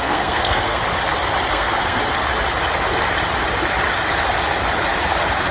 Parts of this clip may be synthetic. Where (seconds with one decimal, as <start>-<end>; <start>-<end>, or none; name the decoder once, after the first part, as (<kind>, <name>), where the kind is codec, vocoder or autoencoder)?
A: 0.0-0.8 (codec, SNAC); 1.5-2.0